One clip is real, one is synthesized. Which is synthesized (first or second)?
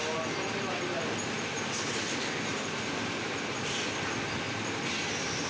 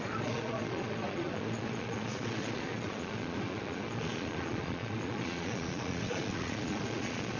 second